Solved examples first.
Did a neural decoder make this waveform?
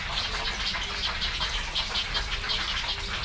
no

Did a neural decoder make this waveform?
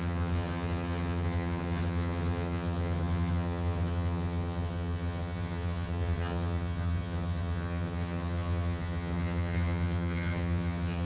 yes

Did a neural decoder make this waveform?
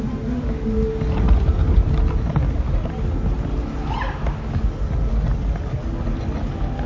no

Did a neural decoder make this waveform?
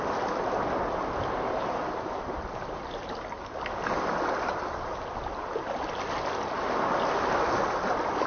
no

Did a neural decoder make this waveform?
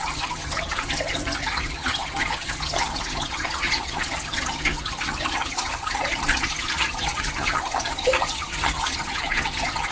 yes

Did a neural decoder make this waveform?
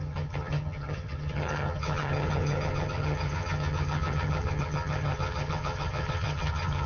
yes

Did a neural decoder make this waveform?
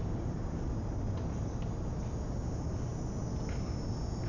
no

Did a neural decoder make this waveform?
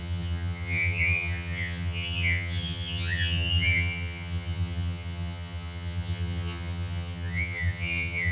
yes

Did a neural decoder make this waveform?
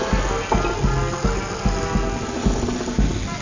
no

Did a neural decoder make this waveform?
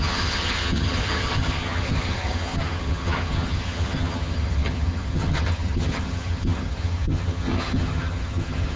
yes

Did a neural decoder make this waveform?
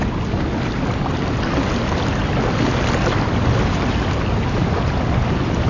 no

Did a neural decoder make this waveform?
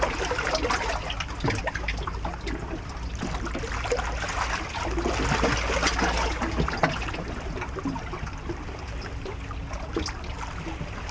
no